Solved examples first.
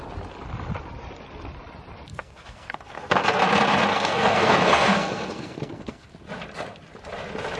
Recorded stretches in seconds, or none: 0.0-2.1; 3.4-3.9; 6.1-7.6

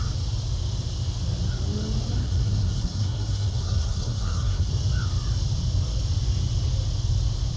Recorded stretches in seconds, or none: 0.0-2.2; 4.7-7.6

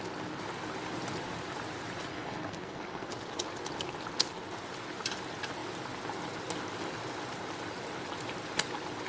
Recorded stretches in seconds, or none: 0.0-2.1; 3.1-9.1

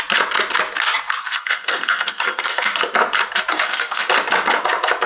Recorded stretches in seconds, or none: 0.0-1.2; 2.7-3.5; 4.1-5.1

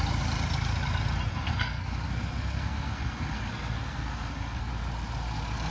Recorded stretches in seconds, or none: 0.0-1.3; 4.7-5.7

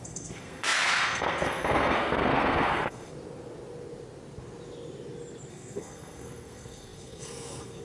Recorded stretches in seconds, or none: 3.1-5.5

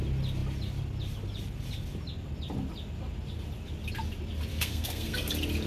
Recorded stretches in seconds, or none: 0.0-4.5; 5.3-5.7